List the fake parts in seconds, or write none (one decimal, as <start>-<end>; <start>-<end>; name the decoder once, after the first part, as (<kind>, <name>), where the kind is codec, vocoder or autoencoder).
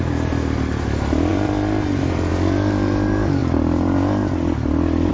none